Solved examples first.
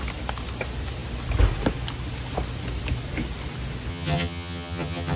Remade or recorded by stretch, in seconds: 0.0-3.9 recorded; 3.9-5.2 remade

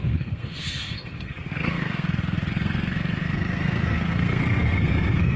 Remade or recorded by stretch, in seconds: 0.0-5.4 remade

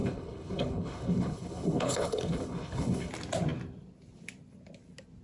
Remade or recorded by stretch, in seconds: 0.0-3.1 remade; 3.1-5.2 recorded

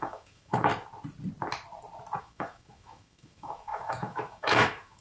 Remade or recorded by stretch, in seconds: 0.0-0.7 remade; 0.7-2.2 recorded; 2.2-5.0 remade

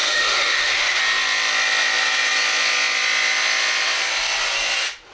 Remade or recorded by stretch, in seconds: 0.0-1.0 remade; 1.0-5.1 recorded

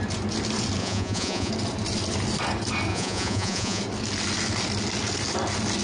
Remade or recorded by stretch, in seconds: 0.0-0.8 recorded; 0.8-1.5 remade; 1.5-2.9 recorded; 2.9-3.8 remade; 3.8-5.8 recorded

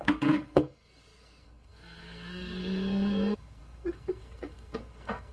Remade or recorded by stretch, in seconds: 0.0-5.3 remade